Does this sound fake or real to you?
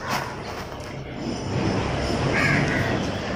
real